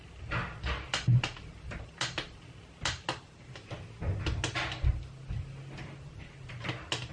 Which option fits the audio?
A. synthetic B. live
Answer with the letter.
B